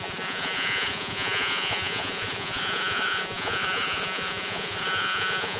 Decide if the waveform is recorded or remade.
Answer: remade